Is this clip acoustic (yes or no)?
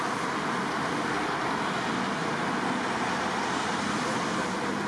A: yes